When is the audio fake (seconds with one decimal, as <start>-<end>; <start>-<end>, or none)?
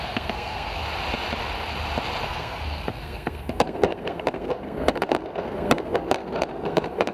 0.0-0.8; 2.2-7.1